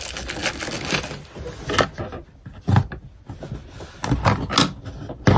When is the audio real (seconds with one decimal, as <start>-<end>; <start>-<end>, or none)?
0.0-5.4